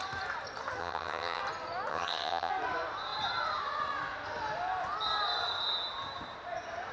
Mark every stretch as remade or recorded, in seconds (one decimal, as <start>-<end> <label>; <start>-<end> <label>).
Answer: 0.0-0.8 recorded; 0.8-1.4 remade; 1.4-1.9 recorded; 1.9-2.5 remade; 2.5-6.9 recorded